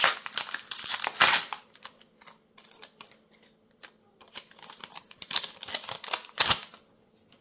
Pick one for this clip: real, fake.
real